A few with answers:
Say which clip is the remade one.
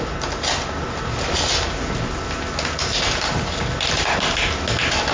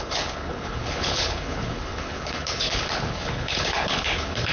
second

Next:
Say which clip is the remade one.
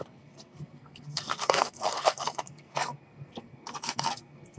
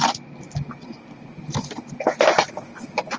first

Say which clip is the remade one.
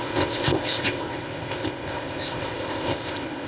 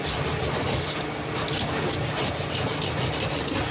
first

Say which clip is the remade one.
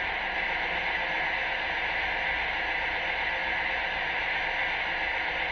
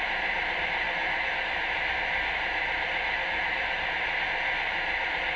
second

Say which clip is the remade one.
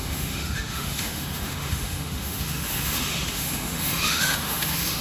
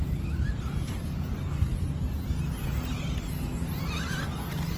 first